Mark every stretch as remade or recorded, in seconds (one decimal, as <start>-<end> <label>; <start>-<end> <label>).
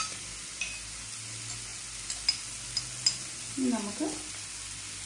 0.0-5.1 recorded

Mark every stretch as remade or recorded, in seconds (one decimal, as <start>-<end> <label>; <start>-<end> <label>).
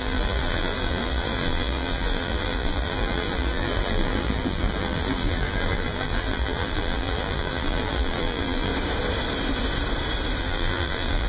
0.0-8.7 remade; 8.7-10.4 recorded; 10.4-11.3 remade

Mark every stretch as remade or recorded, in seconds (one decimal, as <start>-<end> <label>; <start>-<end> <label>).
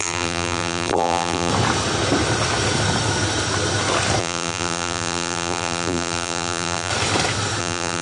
0.0-1.5 remade; 1.5-4.2 recorded; 4.2-6.9 remade; 6.9-7.6 recorded; 7.6-8.0 remade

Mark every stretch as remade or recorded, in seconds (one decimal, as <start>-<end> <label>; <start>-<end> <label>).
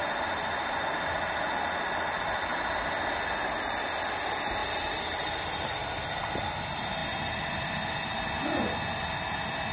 0.0-2.5 recorded; 2.5-3.0 remade; 3.0-4.6 recorded; 4.6-6.5 remade; 6.5-7.0 recorded; 7.0-8.2 remade; 8.2-9.7 recorded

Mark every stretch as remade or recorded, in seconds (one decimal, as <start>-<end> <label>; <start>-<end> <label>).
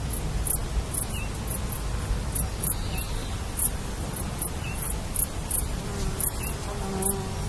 0.0-3.2 recorded; 3.2-6.5 remade; 6.5-7.5 recorded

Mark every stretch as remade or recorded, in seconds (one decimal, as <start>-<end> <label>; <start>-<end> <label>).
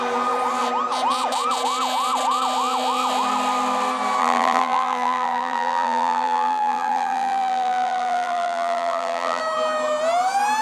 0.0-4.2 recorded; 4.2-9.4 remade; 9.4-10.6 recorded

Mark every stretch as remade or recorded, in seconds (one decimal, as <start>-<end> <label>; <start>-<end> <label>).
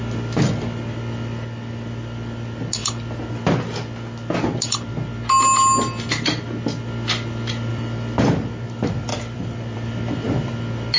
0.0-7.7 recorded; 7.7-8.3 remade; 8.3-9.1 recorded; 9.1-10.5 remade; 10.5-11.0 recorded